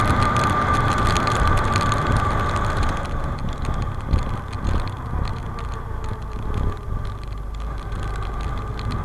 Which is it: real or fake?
real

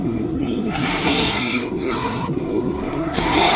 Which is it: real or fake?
fake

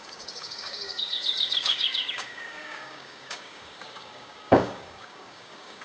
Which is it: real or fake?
fake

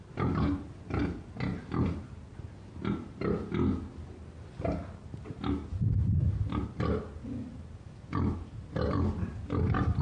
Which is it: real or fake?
real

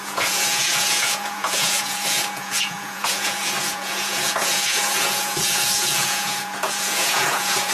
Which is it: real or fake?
fake